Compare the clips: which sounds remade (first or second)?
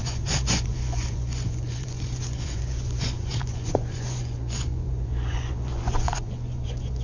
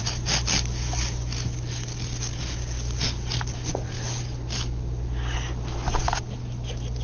first